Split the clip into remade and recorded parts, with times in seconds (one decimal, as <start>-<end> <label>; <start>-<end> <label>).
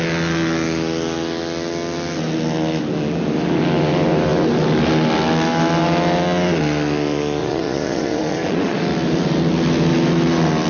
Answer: 0.0-7.4 recorded; 7.4-8.8 remade; 8.8-10.7 recorded